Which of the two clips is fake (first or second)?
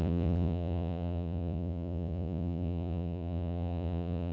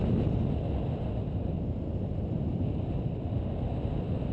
first